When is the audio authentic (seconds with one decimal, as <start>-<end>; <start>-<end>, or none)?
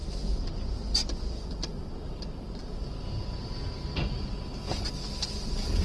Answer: 0.0-5.8